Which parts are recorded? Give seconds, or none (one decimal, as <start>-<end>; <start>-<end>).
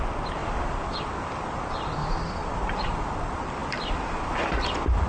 none